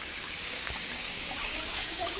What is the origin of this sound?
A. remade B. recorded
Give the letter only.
A